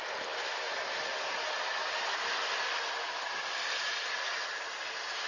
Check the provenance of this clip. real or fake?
real